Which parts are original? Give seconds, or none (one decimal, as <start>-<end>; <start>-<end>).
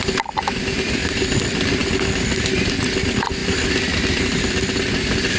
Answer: 0.0-5.4